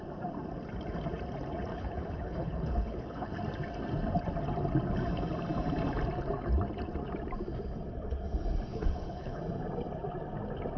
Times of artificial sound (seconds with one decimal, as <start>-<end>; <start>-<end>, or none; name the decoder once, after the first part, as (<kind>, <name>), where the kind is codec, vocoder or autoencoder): 1.7-3.4 (codec, HILCodec); 8.7-9.4